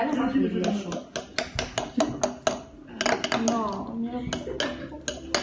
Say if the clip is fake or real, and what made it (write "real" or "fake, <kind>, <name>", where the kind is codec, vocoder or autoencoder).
real